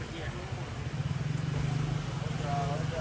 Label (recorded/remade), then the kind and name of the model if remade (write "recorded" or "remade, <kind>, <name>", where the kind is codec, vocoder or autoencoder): recorded